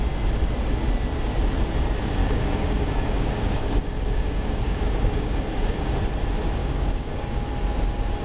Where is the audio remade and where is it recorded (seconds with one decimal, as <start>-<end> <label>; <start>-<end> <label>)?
0.0-2.2 recorded; 2.2-5.9 remade; 5.9-6.6 recorded; 6.6-7.5 remade; 7.5-8.2 recorded